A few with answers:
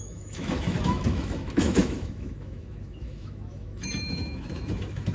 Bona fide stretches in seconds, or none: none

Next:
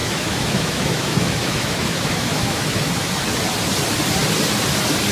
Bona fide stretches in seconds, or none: 3.1-5.1

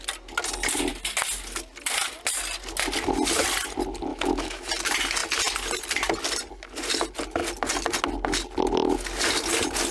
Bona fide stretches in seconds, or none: 0.0-4.1; 4.7-9.9